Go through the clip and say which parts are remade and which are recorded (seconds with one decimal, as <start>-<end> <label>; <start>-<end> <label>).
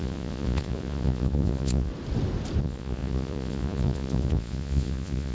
0.0-1.9 remade; 1.9-2.6 recorded; 2.6-5.3 remade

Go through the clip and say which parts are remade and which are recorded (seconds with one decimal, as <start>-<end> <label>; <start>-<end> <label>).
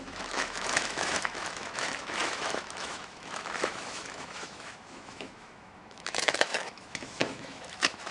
0.0-8.1 remade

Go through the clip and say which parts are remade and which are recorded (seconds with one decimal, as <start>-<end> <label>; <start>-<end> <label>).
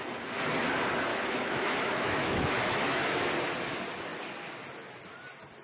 0.0-1.1 recorded; 1.1-3.3 remade; 3.3-5.6 recorded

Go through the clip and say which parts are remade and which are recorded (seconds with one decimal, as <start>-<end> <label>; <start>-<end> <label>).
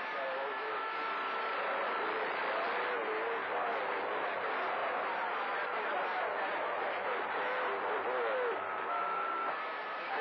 0.0-10.2 recorded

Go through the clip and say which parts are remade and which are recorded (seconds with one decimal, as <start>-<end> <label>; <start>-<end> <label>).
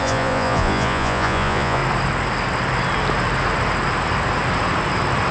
0.0-1.8 remade; 1.8-5.3 recorded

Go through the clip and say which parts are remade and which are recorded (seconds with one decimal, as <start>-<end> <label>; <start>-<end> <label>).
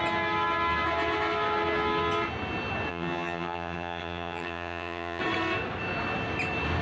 0.0-2.9 recorded; 2.9-5.2 remade; 5.2-6.8 recorded